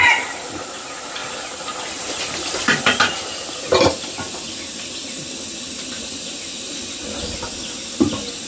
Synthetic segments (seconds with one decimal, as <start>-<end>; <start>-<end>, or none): none